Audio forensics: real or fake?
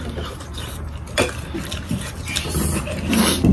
real